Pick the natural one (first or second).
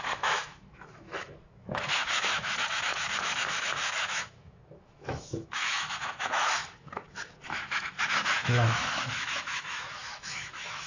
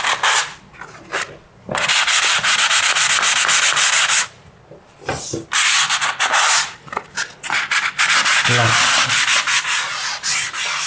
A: second